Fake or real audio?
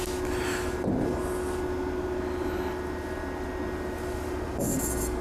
real